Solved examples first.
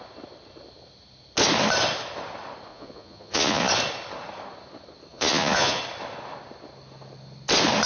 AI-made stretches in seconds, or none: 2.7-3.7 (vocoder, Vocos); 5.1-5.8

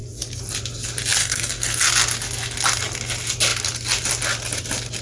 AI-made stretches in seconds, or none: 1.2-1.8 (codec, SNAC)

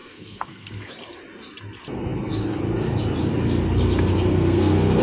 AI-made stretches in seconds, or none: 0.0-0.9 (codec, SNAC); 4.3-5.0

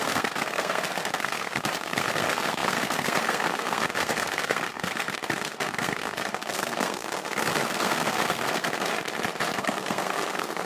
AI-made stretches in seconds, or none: 0.0-8.9 (codec, SNAC); 9.6-10.7

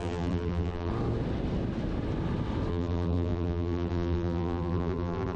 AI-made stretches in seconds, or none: 0.0-0.9 (vocoder, BigVGAN v2); 2.7-5.4

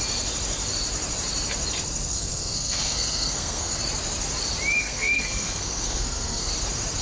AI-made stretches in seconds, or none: 2.1-3.8 (codec, SNAC); 4.8-6.5